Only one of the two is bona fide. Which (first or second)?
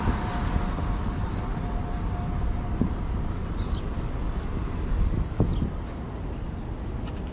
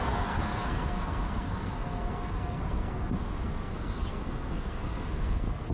first